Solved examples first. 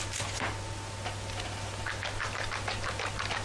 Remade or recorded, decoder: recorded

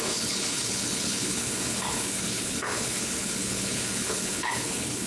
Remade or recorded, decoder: remade, codec, HILCodec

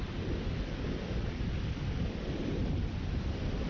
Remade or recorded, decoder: recorded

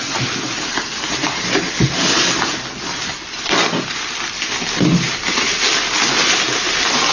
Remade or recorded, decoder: recorded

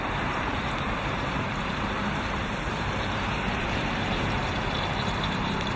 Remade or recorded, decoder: remade, vocoder, BigVGAN v2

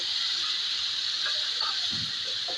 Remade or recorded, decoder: recorded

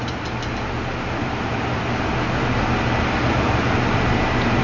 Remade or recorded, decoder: recorded